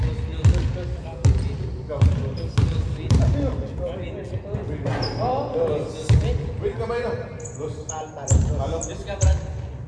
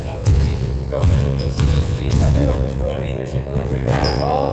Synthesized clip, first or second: second